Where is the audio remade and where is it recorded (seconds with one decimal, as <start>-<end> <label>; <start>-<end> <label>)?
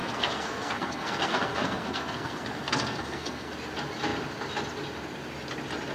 0.0-3.5 remade; 3.5-5.9 recorded